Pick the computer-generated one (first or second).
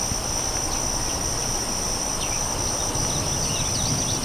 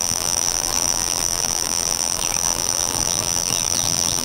second